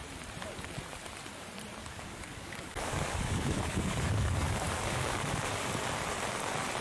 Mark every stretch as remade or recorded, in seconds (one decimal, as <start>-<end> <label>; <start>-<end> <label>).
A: 0.0-1.8 recorded; 1.8-5.7 remade; 5.7-6.8 recorded